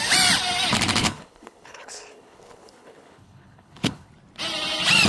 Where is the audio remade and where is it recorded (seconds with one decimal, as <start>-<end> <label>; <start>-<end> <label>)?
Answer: 0.0-1.0 recorded; 1.0-4.1 remade; 4.1-5.1 recorded